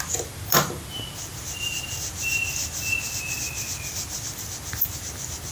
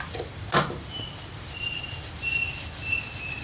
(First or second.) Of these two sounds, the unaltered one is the first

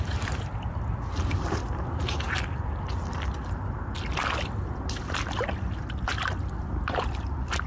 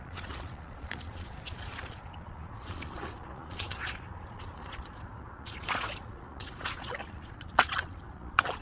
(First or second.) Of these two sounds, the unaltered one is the first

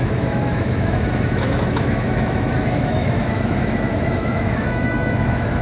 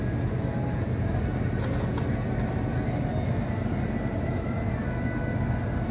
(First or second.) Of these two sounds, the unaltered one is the second